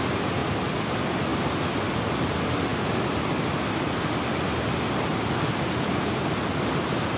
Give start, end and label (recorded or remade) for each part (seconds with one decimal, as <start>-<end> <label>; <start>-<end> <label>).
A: 0.0-7.2 recorded